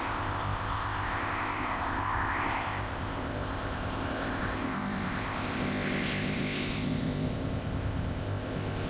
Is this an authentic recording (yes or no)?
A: no